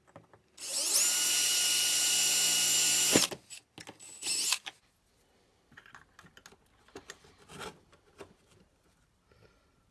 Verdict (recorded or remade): recorded